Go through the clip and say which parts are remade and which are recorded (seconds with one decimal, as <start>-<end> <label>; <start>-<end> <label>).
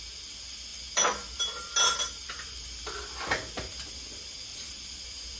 0.0-4.5 recorded; 4.5-5.0 remade; 5.0-5.4 recorded